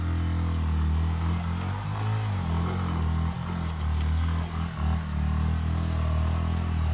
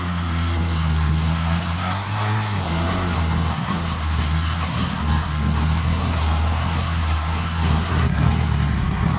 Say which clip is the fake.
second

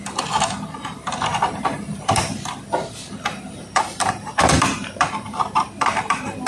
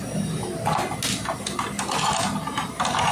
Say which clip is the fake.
first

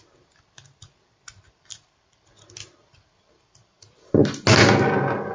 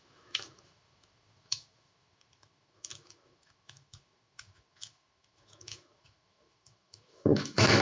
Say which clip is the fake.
second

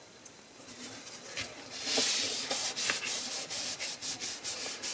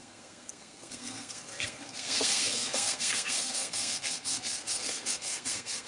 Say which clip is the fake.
second